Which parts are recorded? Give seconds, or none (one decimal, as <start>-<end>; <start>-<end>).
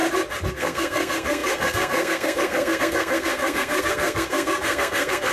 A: 0.0-0.5